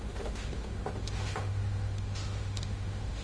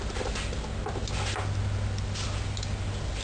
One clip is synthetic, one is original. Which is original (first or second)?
second